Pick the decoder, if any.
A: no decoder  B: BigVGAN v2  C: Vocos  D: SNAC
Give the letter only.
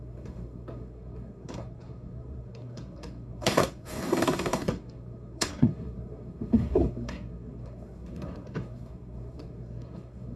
D